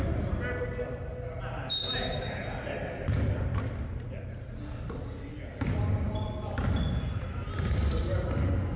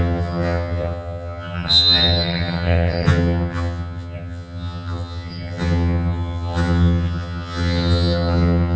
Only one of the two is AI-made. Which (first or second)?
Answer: second